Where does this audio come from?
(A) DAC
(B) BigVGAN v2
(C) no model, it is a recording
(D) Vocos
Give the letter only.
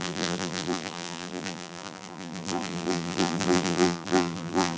B